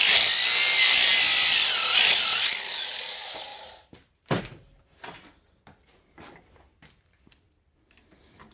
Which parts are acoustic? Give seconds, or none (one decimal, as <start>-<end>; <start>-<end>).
0.0-3.5; 4.4-8.5